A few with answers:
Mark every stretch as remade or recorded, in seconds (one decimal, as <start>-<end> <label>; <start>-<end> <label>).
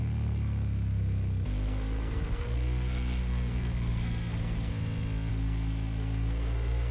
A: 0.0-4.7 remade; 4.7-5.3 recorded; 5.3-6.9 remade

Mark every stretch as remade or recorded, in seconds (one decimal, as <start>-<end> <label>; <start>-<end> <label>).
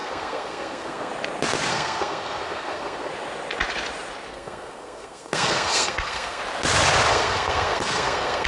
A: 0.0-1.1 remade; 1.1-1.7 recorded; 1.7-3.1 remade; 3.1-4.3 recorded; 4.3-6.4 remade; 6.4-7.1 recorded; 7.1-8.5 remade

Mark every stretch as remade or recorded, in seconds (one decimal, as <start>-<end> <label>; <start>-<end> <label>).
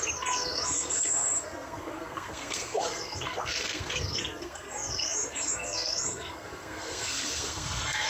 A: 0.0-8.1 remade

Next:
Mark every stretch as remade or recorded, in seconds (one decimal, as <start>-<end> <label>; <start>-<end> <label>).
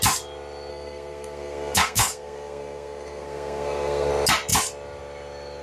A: 0.0-0.7 recorded; 0.7-4.1 remade; 4.1-5.6 recorded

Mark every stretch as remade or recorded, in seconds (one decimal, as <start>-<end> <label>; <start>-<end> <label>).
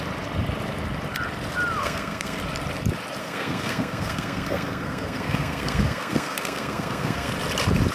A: 0.0-1.8 recorded; 1.8-2.4 remade; 2.4-3.2 recorded; 3.2-7.3 remade; 7.3-7.9 recorded